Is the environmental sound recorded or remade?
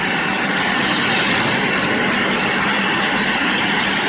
recorded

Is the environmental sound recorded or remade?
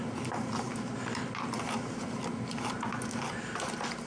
recorded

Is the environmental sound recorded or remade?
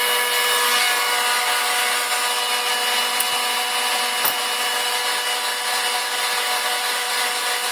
recorded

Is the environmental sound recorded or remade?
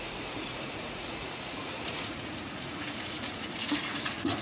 remade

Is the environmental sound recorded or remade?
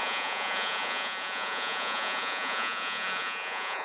remade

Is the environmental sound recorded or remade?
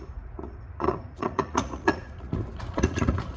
remade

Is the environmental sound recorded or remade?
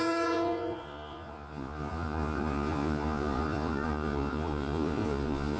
remade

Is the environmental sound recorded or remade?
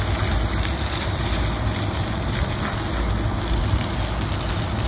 recorded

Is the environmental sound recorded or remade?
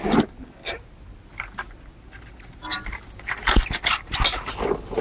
recorded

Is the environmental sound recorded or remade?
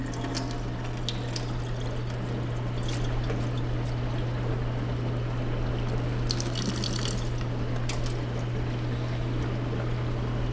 recorded